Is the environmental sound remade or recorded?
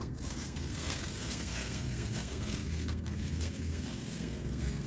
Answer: remade